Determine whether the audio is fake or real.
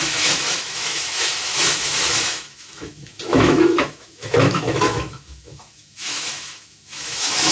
fake